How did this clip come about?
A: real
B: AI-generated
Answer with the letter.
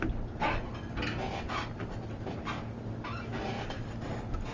A